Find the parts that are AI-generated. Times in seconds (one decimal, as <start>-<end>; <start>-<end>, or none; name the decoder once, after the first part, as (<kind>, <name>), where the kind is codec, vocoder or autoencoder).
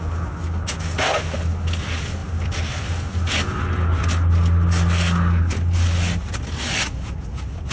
none